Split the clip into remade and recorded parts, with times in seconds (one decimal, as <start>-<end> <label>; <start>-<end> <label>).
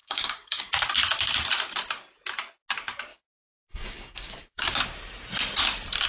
0.0-0.6 remade; 0.6-3.1 recorded; 3.1-4.8 remade; 4.8-6.1 recorded